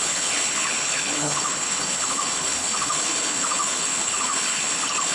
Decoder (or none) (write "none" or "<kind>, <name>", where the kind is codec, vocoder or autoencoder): codec, HILCodec